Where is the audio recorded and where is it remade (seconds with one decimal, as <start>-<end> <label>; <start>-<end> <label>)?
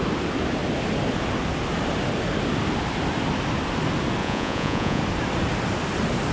0.0-4.2 recorded; 4.2-5.0 remade; 5.0-6.3 recorded